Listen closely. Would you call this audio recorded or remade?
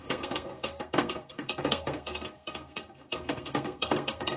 remade